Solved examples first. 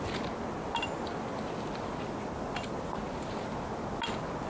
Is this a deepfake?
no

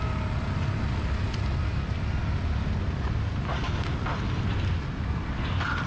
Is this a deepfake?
no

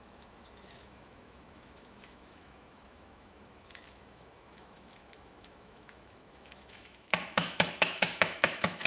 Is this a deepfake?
yes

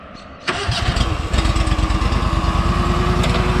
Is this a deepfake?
no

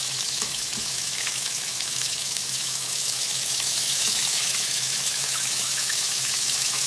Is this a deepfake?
yes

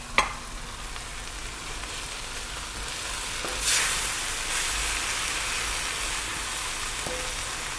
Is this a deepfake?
no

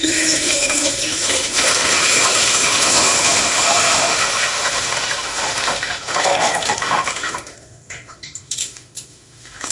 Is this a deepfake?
yes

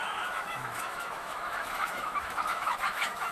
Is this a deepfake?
yes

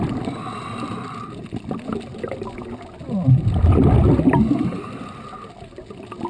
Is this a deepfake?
no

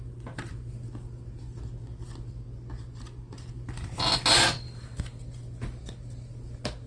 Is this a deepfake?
no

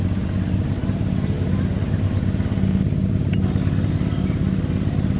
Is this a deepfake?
no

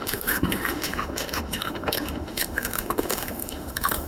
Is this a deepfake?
yes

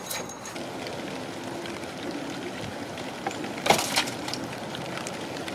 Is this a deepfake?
no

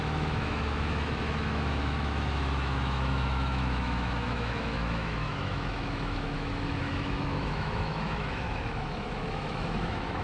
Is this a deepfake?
yes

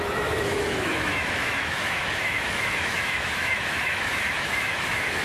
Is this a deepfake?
yes